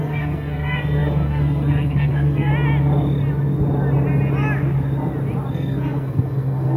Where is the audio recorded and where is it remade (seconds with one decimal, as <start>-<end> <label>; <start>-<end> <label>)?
0.0-2.5 remade; 2.5-5.5 recorded; 5.5-6.8 remade